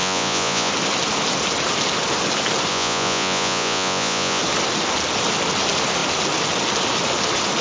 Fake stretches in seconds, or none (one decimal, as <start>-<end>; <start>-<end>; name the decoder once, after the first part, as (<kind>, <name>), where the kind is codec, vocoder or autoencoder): 0.0-0.7 (vocoder, Vocos); 2.7-4.4